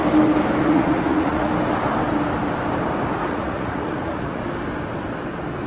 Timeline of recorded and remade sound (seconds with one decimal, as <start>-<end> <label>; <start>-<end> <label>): 0.0-0.6 recorded; 0.6-1.5 remade; 1.5-3.3 recorded; 3.3-4.4 remade; 4.4-5.7 recorded